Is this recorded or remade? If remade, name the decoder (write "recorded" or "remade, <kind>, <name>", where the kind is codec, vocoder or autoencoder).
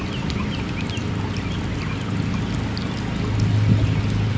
recorded